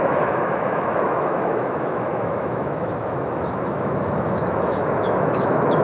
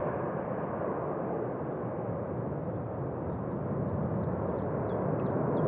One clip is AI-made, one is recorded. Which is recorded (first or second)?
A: second